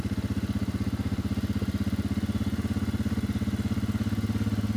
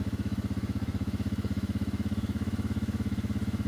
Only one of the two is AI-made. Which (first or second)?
second